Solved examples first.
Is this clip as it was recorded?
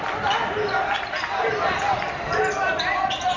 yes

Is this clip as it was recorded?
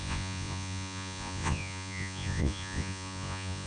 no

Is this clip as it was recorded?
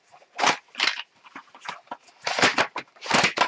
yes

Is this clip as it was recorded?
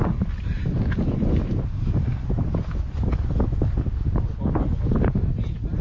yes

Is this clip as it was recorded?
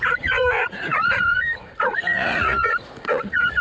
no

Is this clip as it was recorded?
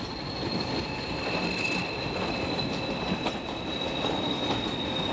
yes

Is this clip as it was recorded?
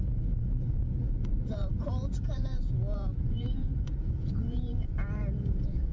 no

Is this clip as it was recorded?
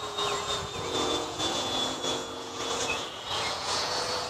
no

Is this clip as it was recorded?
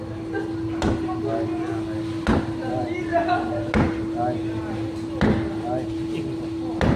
yes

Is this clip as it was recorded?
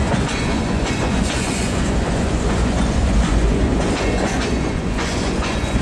no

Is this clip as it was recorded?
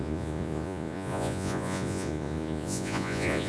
no